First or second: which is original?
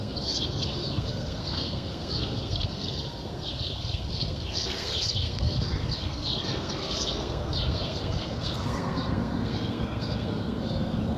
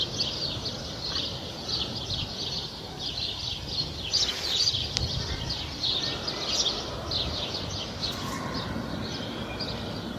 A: second